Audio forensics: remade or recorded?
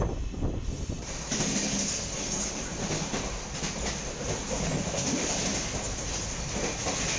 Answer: recorded